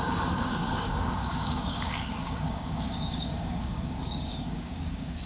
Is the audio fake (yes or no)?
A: yes